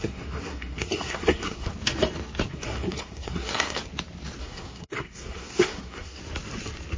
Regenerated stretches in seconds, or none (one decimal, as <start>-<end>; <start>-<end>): 0.0-1.7; 2.5-3.8; 4.4-6.2